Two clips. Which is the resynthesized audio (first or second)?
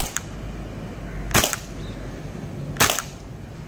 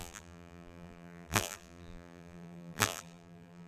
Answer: second